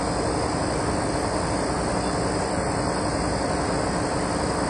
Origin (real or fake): real